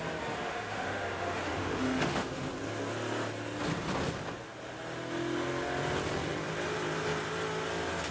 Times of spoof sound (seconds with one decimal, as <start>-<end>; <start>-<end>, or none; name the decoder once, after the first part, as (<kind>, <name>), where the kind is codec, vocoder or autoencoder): 0.4-2.5 (autoencoder, DAC-VAE)